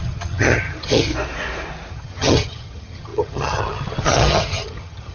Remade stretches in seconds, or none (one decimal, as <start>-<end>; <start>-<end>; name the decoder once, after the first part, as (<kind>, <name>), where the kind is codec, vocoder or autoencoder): 0.0-1.1 (vocoder, HiFi-GAN); 1.9-5.1